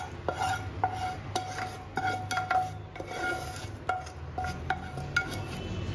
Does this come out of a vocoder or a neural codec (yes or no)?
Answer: no